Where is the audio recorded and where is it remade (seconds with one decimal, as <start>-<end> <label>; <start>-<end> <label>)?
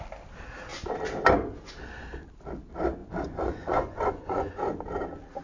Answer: 0.0-3.0 recorded; 3.0-4.5 remade; 4.5-5.4 recorded